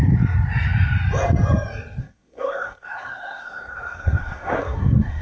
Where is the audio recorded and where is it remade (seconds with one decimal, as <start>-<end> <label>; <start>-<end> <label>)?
0.0-2.0 recorded; 2.0-5.2 remade